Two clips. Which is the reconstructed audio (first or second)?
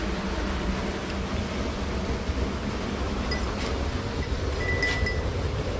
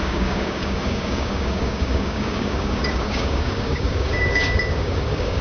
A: second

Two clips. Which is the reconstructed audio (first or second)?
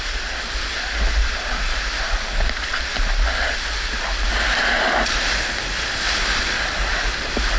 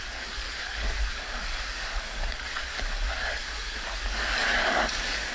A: second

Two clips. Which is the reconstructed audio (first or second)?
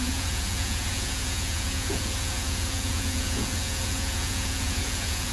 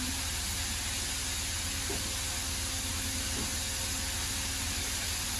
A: first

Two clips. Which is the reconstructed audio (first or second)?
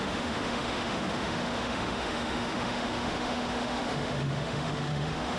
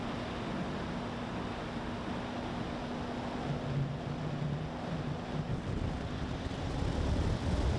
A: first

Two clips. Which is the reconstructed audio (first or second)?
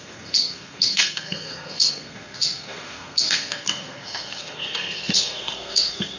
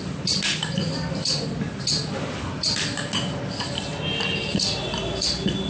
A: first